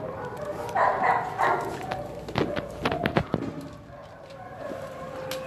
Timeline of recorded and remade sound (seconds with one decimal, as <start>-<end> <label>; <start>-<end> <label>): 0.0-5.5 recorded